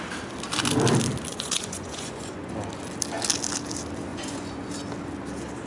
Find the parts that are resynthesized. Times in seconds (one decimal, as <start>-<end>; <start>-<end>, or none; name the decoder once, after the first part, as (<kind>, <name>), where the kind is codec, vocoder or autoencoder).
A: 1.3-2.5 (vocoder, Vocos); 4.1-4.7